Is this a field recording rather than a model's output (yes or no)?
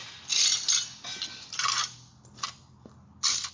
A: yes